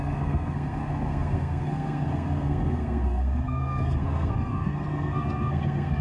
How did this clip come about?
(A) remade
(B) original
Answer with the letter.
A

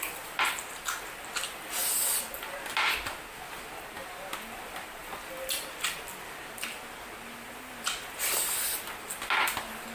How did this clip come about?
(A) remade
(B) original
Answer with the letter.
B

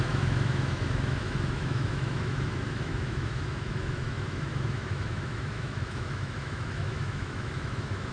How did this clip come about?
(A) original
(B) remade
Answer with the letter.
B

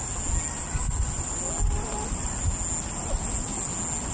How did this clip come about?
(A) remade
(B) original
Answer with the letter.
B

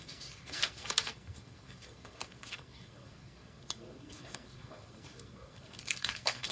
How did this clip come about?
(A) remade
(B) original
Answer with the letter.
A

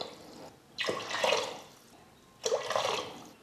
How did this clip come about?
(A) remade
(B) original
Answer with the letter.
B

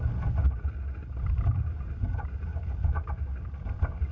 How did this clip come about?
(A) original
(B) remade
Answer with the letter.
A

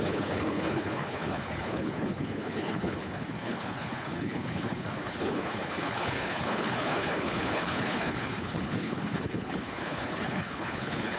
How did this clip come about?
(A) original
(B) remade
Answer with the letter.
B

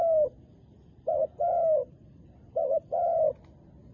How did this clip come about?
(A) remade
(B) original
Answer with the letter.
B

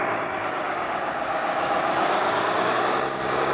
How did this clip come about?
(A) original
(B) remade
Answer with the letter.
B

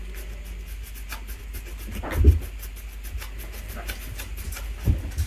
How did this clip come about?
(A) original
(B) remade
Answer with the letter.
A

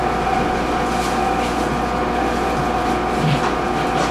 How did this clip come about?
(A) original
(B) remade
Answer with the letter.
A